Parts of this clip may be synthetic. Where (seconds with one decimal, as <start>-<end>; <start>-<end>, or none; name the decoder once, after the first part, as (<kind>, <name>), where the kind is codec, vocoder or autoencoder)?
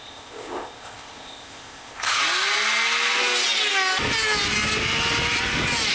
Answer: 0.0-2.2 (codec, ZipCodec)